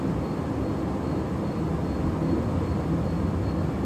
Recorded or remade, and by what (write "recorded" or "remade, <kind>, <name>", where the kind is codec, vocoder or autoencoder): recorded